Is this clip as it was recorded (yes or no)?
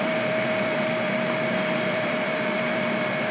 no